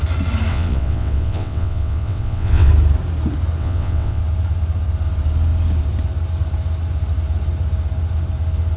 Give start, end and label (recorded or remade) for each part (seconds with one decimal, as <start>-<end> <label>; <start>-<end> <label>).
0.0-0.5 recorded; 0.5-2.7 remade; 2.7-3.6 recorded; 3.6-4.2 remade; 4.2-8.8 recorded